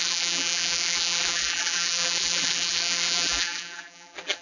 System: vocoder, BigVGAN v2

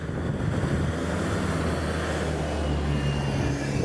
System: none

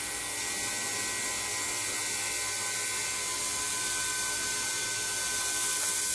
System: none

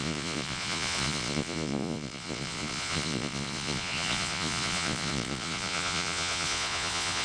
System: vocoder, Vocos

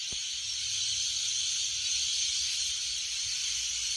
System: none